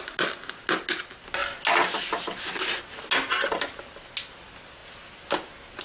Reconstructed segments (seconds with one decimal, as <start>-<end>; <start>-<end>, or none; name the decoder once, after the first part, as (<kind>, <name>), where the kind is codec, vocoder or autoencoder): none